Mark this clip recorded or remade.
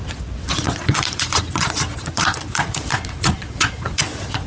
remade